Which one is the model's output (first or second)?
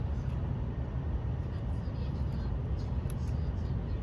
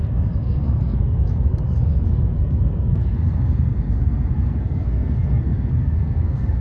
second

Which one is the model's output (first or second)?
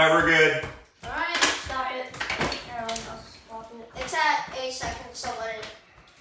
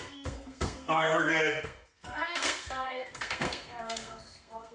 second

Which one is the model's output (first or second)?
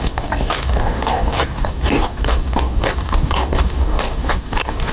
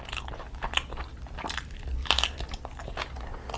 first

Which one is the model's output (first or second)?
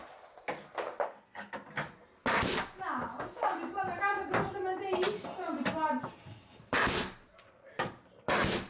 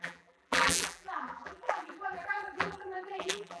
second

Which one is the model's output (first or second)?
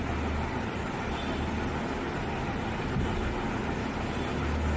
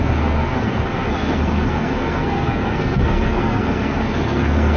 second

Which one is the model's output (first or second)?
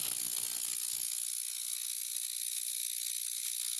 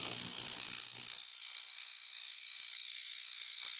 second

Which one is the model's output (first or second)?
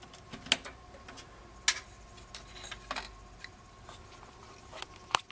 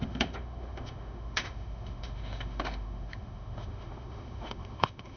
second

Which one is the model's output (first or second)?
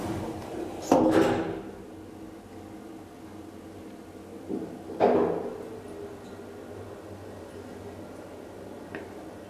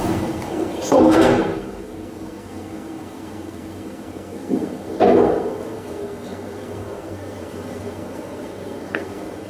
second